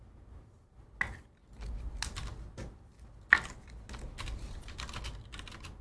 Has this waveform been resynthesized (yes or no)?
no